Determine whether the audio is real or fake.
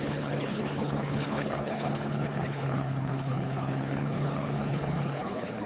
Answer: fake